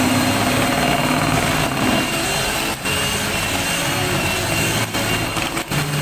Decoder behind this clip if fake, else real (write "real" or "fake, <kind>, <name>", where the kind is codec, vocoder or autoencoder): real